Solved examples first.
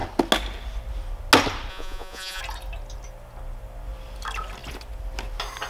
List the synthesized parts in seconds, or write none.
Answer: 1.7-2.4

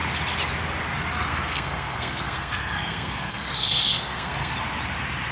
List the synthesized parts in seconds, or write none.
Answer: 1.3-4.5

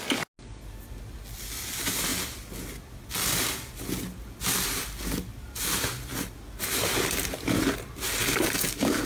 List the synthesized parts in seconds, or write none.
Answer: 8.2-9.1

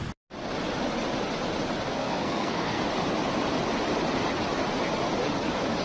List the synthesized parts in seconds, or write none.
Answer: 1.9-2.8

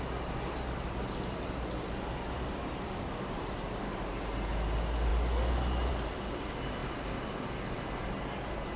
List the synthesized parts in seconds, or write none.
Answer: none

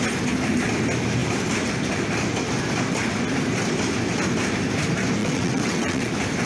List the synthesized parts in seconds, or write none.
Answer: 5.2-6.1

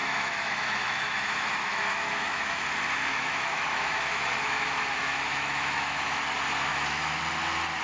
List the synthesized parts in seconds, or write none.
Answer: 0.0-2.6; 3.1-6.2; 6.7-7.2

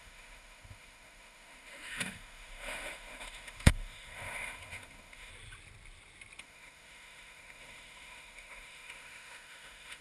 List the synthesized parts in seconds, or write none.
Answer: 0.0-5.3; 6.4-10.0